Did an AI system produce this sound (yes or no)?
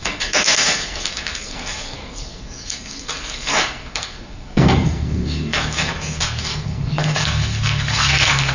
yes